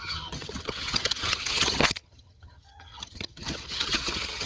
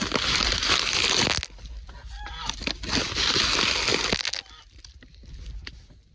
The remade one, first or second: first